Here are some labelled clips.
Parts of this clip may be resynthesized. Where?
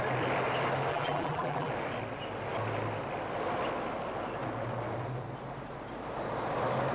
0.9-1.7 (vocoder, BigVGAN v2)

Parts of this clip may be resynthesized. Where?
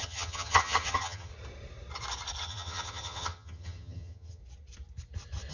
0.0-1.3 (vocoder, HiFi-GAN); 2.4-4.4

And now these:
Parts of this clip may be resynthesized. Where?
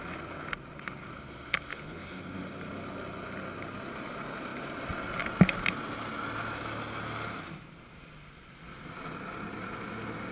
1.7-2.2 (codec, HILCodec)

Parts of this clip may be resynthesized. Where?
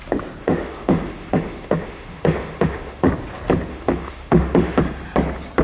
0.4-3.1 (autoencoder, DAC-VAE); 3.7-4.8